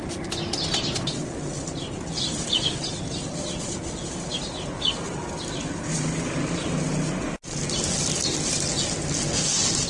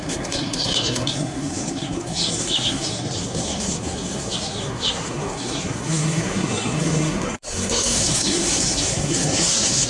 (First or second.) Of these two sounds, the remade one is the second